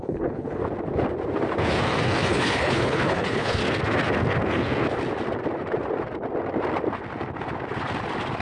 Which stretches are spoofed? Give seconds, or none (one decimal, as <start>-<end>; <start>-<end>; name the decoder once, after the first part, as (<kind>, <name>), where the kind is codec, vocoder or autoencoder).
0.0-0.6 (codec, HILCodec); 2.3-3.6